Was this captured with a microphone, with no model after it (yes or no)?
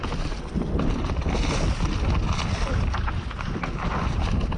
yes